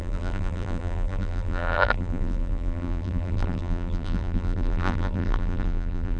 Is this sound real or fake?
fake